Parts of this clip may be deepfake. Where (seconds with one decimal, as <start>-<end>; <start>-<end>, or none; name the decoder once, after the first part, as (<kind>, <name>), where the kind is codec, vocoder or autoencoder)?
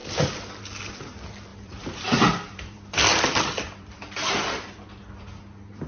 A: 1.5-5.0 (vocoder, BigVGAN v2)